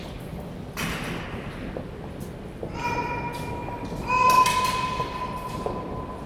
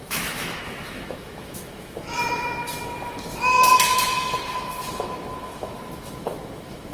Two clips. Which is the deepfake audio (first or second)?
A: second